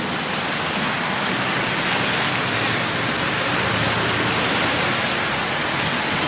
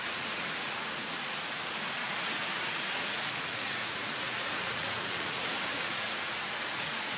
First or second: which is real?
first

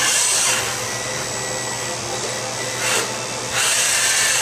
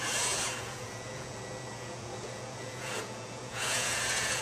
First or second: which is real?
first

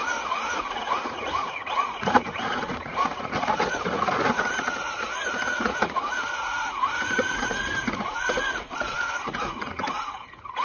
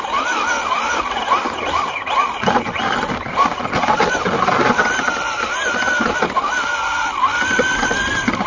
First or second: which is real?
second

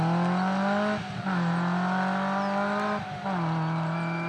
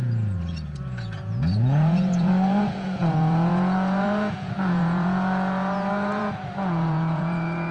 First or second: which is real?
first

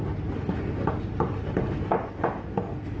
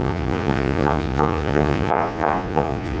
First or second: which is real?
first